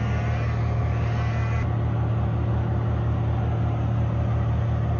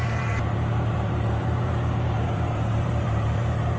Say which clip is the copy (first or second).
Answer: second